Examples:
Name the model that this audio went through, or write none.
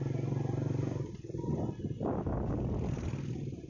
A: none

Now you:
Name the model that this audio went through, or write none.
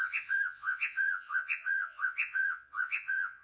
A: vocoder, Vocos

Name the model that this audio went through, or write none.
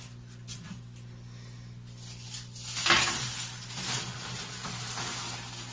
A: none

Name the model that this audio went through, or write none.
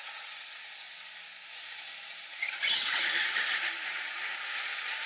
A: vocoder, BigVGAN v2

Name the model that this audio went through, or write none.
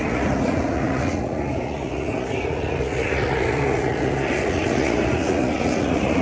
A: vocoder, Vocos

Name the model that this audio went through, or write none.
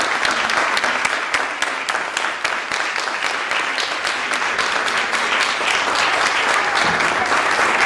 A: none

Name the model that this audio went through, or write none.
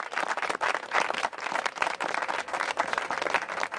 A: none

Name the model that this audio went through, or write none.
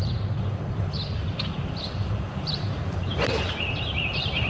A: vocoder, BigVGAN v2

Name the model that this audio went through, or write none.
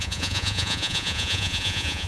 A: vocoder, Vocos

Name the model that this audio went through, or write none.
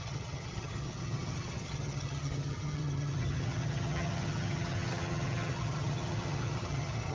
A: vocoder, HiFi-GAN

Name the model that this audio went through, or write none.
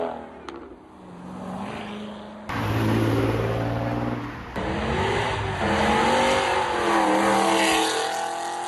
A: none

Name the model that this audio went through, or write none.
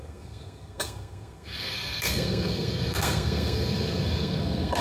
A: codec, SNAC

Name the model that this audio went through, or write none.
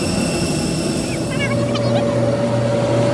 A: none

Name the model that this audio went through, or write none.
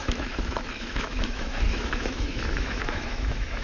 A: autoencoder, DAC-VAE